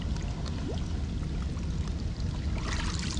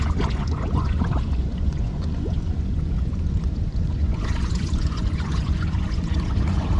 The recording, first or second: first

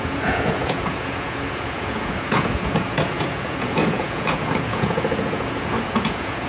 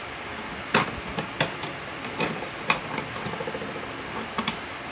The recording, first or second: second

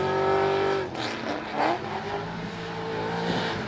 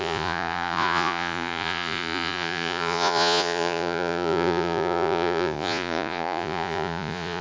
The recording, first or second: first